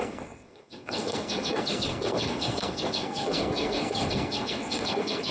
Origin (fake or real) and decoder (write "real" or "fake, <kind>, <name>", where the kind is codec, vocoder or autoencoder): fake, codec, SNAC